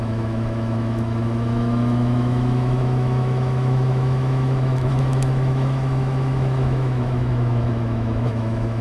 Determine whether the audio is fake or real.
fake